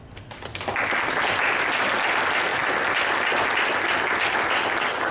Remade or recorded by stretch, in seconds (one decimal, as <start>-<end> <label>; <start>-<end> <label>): 0.0-5.1 recorded